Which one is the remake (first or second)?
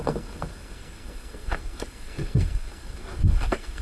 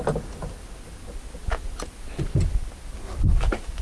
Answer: first